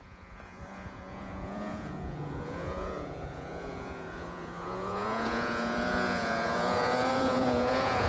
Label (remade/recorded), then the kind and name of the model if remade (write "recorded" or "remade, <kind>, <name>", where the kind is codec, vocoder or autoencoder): remade, vocoder, Vocos